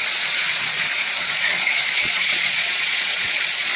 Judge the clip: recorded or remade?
remade